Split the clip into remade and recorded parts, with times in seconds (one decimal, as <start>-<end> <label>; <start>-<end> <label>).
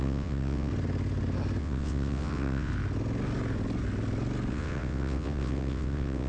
0.0-0.7 remade; 0.7-1.6 recorded; 1.6-2.7 remade; 2.7-4.5 recorded; 4.5-6.3 remade